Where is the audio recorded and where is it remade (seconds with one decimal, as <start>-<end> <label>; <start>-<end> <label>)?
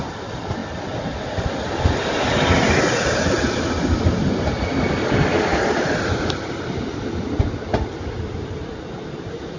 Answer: 0.0-9.6 recorded